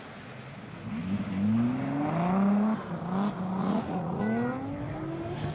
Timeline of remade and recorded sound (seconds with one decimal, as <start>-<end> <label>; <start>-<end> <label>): 0.0-3.6 recorded; 3.6-4.2 remade; 4.2-5.5 recorded